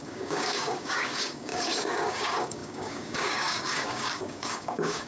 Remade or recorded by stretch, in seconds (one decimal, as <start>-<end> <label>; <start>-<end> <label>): 0.0-5.1 remade